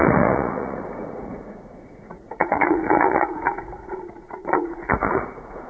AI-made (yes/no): yes